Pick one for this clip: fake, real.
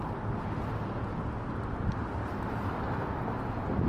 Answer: real